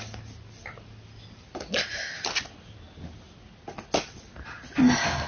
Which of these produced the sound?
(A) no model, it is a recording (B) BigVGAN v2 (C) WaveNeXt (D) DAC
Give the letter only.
A